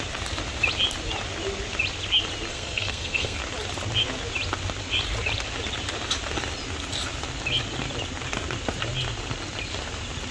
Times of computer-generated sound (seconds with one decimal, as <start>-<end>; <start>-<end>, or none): 2.5-3.4